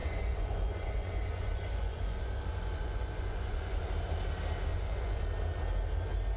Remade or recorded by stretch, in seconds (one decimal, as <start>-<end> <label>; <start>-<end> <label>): 0.0-3.8 remade; 3.8-4.7 recorded; 4.7-5.2 remade; 5.2-6.4 recorded